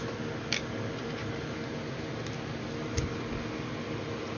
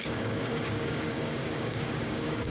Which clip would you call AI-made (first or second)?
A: second